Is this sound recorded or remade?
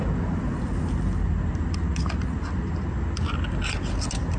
recorded